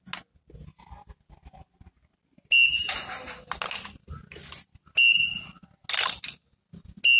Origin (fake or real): real